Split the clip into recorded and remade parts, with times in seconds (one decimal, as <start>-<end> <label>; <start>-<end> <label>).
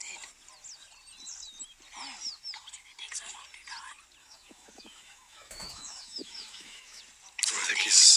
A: 0.0-4.2 recorded; 4.2-7.0 remade; 7.0-8.2 recorded